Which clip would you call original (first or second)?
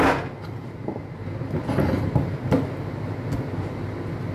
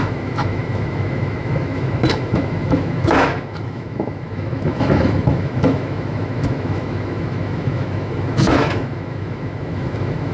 first